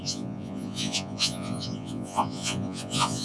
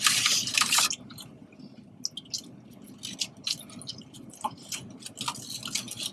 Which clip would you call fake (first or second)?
first